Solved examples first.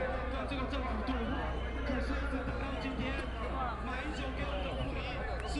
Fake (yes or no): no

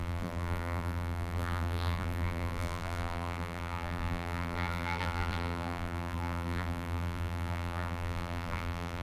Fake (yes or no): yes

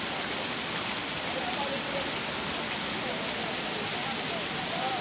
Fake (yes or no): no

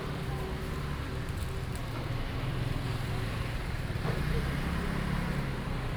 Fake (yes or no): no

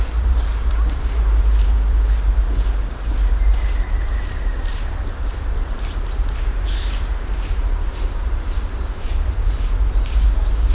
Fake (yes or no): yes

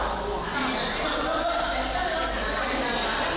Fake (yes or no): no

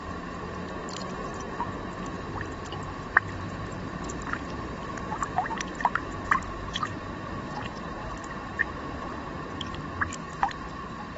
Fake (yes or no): yes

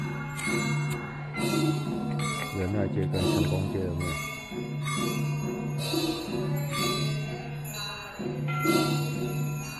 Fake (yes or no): no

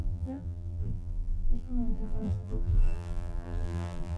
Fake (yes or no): yes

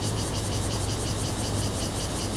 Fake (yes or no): yes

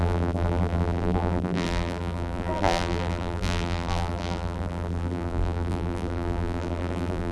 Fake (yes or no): yes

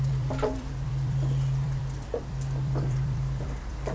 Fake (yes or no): yes